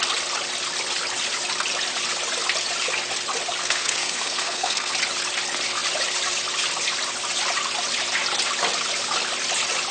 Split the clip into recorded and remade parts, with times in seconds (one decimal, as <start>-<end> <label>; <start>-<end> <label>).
0.0-3.6 recorded; 3.6-4.9 remade; 4.9-9.9 recorded